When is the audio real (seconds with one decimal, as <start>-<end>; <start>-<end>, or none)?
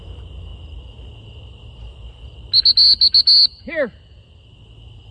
0.0-5.1